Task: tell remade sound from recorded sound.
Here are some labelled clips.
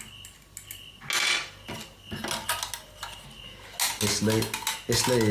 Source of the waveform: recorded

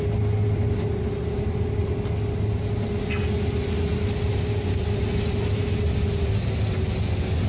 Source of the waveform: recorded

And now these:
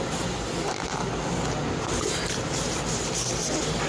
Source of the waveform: recorded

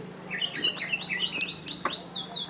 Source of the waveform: recorded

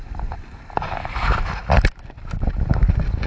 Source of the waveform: recorded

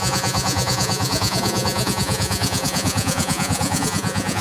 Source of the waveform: remade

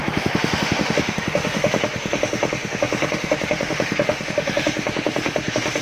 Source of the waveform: remade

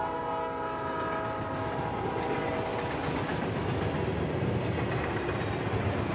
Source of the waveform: recorded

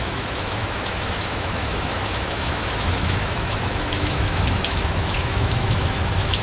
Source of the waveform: remade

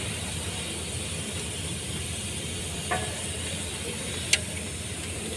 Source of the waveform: recorded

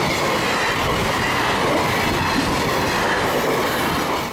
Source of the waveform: recorded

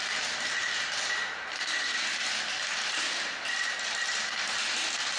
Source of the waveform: recorded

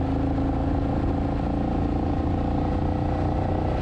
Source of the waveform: recorded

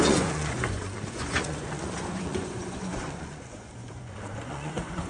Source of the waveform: remade